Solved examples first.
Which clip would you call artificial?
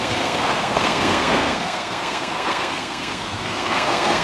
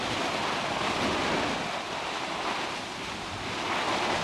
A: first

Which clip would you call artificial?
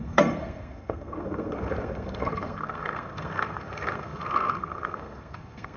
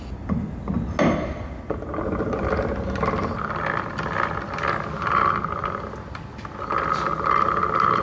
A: first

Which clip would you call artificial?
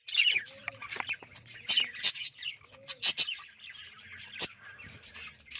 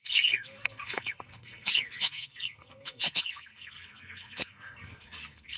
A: second